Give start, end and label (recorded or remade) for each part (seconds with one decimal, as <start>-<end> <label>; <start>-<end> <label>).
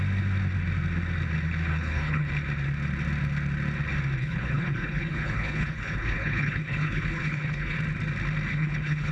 0.0-1.7 recorded; 1.7-2.3 remade; 2.3-4.2 recorded; 4.2-7.8 remade; 7.8-8.5 recorded; 8.5-9.1 remade